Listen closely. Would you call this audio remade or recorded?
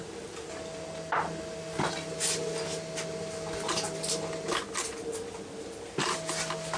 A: recorded